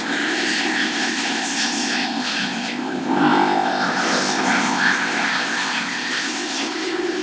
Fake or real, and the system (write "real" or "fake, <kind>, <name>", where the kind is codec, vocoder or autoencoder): fake, codec, ZipCodec